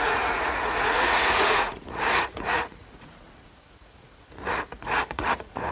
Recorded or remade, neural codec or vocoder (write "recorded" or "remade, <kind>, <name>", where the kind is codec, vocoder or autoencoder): remade, vocoder, Vocos